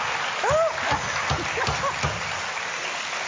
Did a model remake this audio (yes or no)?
no